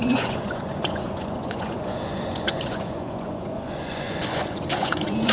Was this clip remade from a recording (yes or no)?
yes